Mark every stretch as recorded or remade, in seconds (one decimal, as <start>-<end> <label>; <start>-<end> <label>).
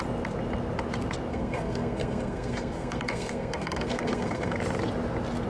0.0-1.3 recorded; 1.3-4.6 remade; 4.6-5.5 recorded